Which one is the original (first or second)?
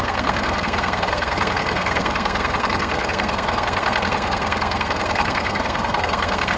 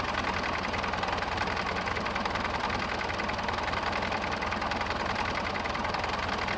second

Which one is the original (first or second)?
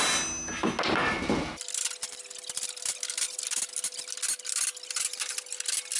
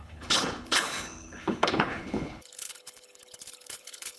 first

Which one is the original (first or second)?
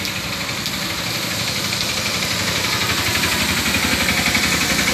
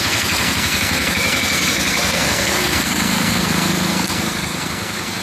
first